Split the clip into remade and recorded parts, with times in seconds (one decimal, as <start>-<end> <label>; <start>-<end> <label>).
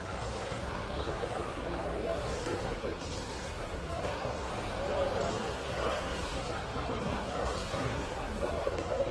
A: 0.0-4.5 remade; 4.5-5.3 recorded; 5.3-9.1 remade